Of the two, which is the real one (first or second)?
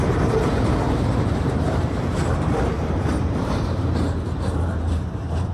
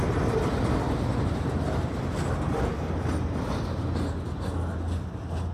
second